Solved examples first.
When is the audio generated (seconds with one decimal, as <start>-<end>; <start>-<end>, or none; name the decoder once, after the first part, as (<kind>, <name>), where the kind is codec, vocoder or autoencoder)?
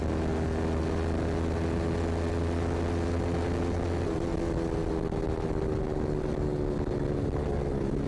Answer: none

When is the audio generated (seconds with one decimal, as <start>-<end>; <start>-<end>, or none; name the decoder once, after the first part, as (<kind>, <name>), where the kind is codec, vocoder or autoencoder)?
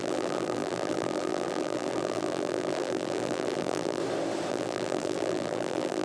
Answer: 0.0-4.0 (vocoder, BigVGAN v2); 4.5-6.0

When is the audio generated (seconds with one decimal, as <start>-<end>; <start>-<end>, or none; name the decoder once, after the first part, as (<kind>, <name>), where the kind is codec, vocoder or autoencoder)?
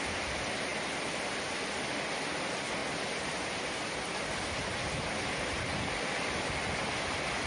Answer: none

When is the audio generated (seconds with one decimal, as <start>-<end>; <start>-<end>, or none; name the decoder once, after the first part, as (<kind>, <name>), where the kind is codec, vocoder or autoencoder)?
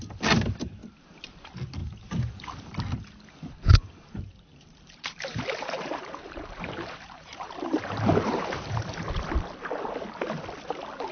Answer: 0.8-1.3 (vocoder, BigVGAN v2); 1.8-2.7; 3.7-8.8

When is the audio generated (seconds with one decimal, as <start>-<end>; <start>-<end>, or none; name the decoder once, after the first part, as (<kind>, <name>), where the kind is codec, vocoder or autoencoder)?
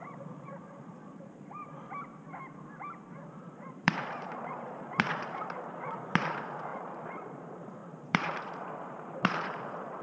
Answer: 0.0-1.7 (vocoder, Vocos); 3.4-10.0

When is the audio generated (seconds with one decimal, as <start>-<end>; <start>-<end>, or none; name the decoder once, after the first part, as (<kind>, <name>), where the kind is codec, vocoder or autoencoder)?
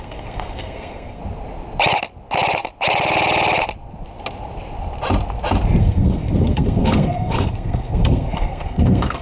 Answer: 0.0-1.2 (codec, SNAC); 5.8-9.2